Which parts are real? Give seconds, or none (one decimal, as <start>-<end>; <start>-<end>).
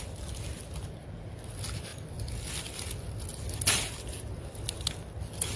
0.0-5.6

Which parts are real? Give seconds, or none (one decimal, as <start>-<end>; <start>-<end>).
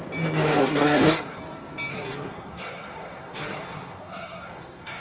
0.0-0.6; 1.4-1.9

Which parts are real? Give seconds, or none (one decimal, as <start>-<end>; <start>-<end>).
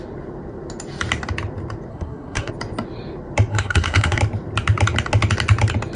0.0-1.9; 2.5-3.5; 4.2-6.0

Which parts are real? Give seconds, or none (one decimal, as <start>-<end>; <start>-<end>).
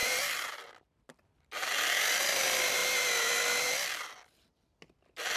0.0-5.4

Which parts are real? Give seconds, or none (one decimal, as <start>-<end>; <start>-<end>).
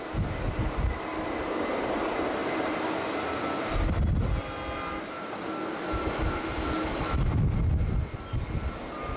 0.0-9.2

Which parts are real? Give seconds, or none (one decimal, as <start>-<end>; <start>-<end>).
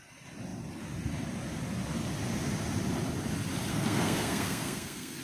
0.0-3.7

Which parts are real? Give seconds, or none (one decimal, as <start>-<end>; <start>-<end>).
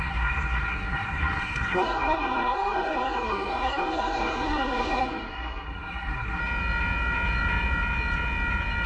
6.4-8.9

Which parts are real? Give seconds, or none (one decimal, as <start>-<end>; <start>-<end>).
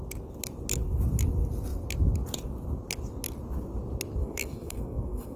0.0-4.2